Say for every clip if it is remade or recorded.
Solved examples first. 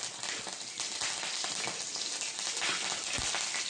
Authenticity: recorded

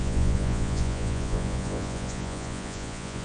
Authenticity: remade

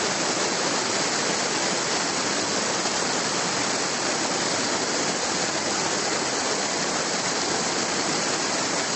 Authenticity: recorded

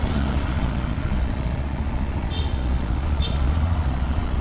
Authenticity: remade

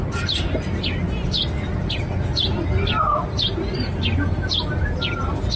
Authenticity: recorded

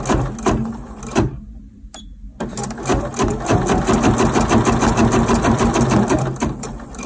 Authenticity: recorded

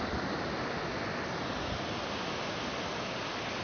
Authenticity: recorded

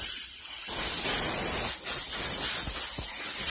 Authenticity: recorded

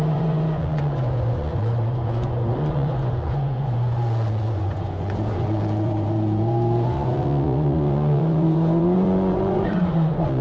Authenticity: remade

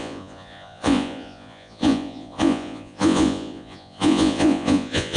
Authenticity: remade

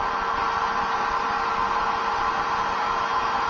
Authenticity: recorded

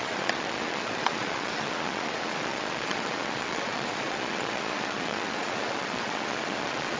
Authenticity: remade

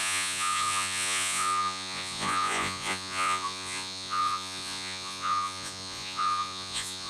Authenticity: remade